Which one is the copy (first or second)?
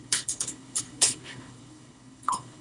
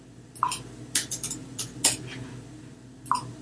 first